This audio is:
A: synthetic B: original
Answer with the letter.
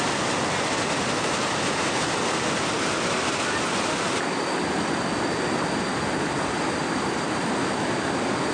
B